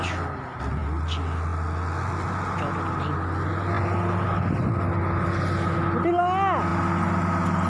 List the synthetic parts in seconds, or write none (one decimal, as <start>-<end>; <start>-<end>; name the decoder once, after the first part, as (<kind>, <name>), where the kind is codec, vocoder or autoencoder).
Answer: none